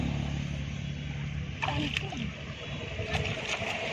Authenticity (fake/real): real